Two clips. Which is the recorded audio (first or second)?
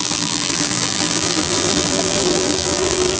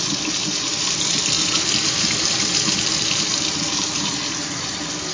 second